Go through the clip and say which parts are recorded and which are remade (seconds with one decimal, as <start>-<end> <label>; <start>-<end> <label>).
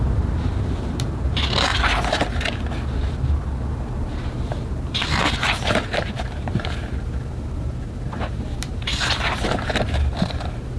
0.0-1.7 remade; 1.7-4.0 recorded; 4.0-10.8 remade